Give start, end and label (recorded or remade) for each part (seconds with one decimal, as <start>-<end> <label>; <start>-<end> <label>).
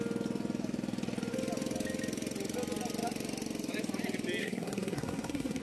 0.0-4.4 recorded; 4.4-5.6 remade